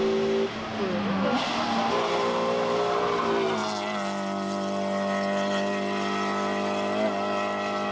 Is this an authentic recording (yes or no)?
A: yes